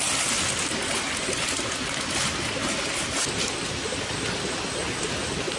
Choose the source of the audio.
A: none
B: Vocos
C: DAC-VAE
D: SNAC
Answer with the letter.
A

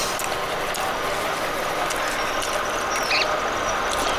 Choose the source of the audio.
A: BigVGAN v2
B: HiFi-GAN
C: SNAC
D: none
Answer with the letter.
D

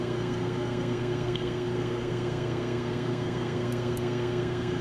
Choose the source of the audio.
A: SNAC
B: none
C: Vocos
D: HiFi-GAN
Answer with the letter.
A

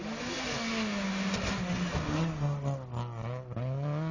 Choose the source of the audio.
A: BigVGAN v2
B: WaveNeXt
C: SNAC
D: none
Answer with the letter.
D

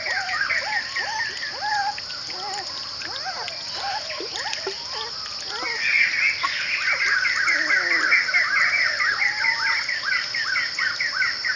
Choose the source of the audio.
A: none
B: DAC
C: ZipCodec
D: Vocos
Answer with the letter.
A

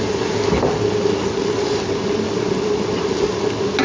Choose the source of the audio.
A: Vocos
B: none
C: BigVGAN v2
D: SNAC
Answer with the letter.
B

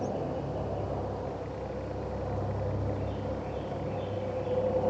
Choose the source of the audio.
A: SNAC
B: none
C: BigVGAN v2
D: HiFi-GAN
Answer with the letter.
B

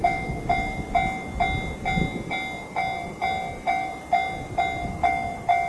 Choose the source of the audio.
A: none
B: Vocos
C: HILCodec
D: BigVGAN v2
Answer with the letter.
A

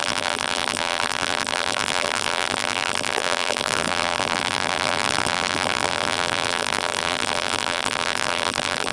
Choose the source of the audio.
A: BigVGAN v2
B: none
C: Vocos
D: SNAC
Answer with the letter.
A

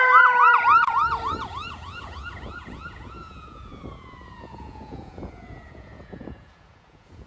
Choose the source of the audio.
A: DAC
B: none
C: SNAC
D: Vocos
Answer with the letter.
D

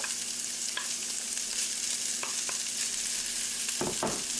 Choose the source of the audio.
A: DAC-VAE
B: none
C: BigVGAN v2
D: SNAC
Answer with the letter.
B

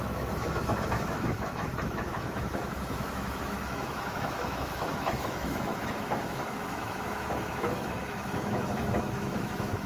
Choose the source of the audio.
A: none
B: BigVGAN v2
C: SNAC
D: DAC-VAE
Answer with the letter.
D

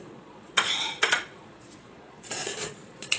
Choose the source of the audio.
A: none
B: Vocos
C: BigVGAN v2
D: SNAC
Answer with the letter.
B